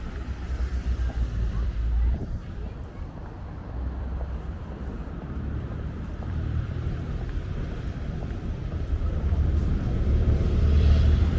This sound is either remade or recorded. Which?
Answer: remade